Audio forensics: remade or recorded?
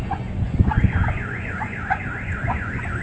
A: remade